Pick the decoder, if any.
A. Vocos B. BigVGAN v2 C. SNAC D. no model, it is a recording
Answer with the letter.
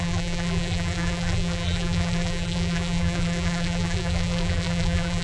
B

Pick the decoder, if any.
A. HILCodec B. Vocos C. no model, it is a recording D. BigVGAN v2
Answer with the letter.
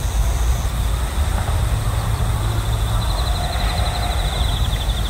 C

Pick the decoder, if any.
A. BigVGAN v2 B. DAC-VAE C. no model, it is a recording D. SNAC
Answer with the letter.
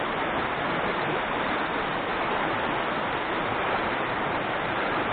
A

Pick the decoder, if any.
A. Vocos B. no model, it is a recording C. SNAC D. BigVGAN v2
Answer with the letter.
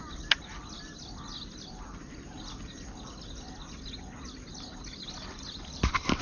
B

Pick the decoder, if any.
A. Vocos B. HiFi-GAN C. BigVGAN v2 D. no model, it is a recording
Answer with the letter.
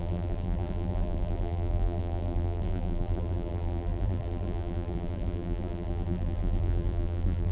C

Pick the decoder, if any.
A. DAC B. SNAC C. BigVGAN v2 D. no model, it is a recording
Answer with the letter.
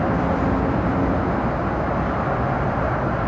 D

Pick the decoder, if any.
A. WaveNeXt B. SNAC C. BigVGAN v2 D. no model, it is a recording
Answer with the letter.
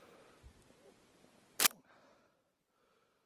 D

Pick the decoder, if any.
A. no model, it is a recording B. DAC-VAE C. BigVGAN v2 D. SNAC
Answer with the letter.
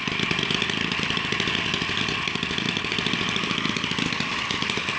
A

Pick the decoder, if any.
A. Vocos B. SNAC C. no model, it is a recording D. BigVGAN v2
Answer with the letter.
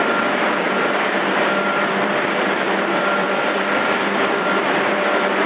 D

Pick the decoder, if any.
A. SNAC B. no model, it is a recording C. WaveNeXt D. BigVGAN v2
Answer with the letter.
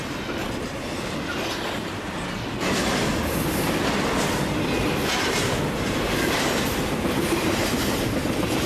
B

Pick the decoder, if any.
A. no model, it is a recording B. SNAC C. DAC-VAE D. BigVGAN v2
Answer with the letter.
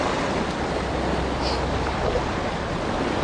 A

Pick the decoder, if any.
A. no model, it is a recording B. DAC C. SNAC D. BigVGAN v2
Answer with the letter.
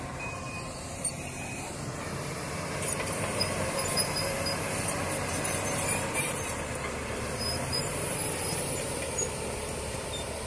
D